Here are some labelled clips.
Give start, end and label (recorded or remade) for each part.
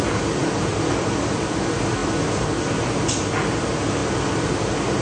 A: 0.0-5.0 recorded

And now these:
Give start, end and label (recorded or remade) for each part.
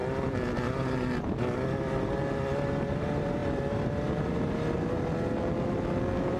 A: 0.0-6.4 recorded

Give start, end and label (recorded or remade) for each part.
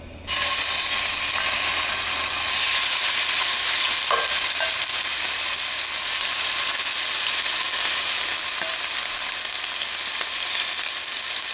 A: 0.0-11.5 recorded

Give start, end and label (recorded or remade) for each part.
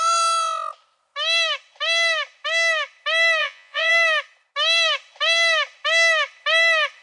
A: 0.0-3.4 recorded; 3.4-3.9 remade; 3.9-7.0 recorded